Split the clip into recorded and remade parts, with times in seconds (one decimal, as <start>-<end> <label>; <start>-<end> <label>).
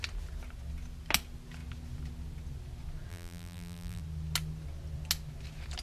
0.0-3.1 recorded; 3.1-4.0 remade; 4.0-5.8 recorded